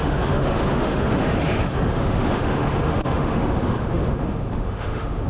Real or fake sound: fake